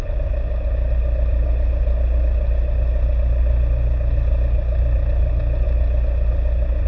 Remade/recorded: recorded